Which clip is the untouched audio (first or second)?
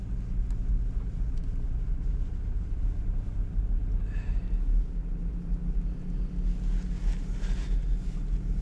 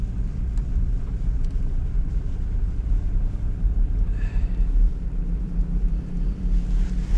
first